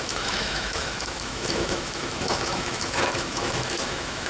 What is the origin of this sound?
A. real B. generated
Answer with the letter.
B